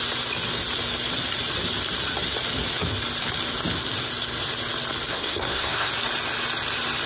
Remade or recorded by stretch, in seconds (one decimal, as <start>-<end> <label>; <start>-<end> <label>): 0.0-5.1 recorded; 5.1-5.9 remade; 5.9-7.1 recorded